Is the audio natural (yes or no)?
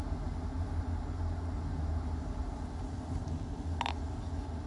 yes